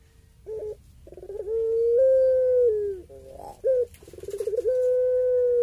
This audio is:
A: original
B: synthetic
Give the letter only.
A